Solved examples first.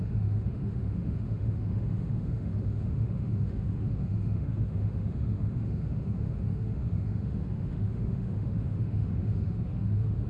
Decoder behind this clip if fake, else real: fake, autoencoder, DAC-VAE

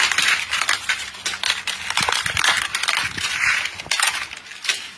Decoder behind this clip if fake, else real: real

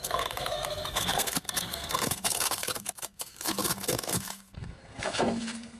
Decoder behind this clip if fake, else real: fake, codec, SNAC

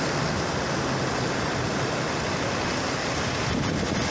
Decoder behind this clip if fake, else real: real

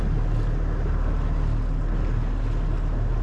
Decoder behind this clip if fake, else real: real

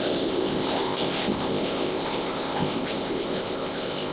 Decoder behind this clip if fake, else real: fake, codec, ZipCodec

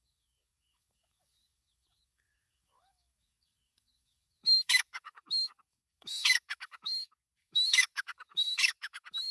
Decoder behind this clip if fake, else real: fake, codec, DAC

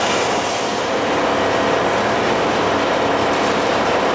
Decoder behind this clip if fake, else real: real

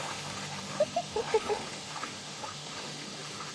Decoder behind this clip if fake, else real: fake, autoencoder, DAC-VAE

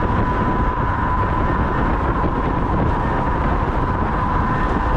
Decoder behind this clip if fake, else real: real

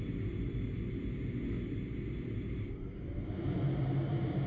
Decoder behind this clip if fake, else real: real